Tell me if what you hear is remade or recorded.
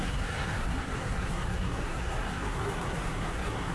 remade